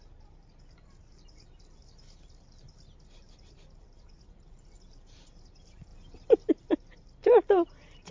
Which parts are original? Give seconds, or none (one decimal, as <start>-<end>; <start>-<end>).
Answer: none